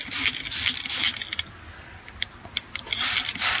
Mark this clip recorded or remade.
recorded